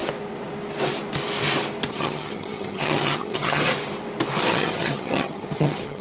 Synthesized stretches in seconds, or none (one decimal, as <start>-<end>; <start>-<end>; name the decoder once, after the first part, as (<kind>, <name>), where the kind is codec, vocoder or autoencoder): 1.9-3.6 (vocoder, HiFi-GAN); 4.5-6.0